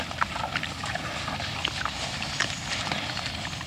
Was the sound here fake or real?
real